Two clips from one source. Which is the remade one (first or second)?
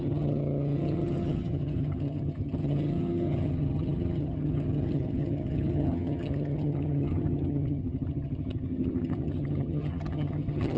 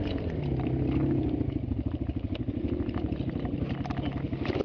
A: first